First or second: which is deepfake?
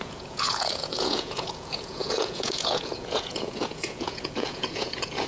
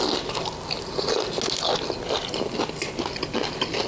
first